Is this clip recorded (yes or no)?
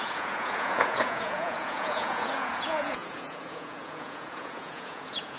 no